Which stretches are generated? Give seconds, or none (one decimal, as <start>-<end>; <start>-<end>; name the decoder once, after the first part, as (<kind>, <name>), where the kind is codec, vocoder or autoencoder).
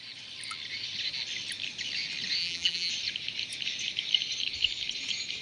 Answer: 2.4-2.9 (vocoder, BigVGAN v2)